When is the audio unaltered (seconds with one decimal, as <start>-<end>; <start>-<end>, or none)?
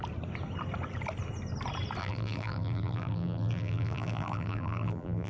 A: 0.0-2.0